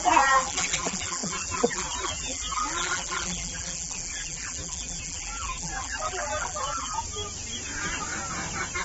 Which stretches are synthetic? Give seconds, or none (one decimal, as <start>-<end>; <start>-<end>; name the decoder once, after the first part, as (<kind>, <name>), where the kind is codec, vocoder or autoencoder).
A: 0.0-7.0 (vocoder, BigVGAN v2)